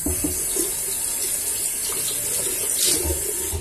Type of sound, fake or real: real